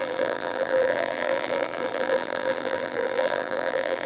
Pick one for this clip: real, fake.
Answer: fake